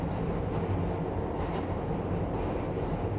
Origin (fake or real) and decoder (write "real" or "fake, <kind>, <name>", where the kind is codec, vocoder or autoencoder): real